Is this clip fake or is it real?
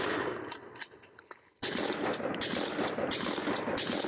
real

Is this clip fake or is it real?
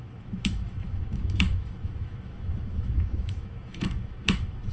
fake